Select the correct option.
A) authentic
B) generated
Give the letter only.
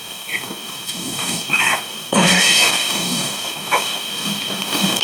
B